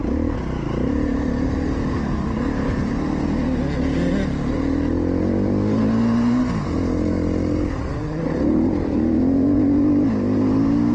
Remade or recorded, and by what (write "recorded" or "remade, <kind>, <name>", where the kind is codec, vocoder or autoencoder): recorded